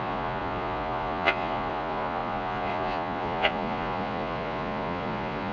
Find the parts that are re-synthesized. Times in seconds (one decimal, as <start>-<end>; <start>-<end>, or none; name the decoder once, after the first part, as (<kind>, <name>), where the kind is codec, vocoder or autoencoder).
0.0-5.5 (vocoder, Vocos)